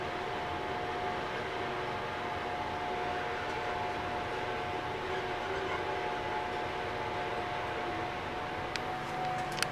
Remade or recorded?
recorded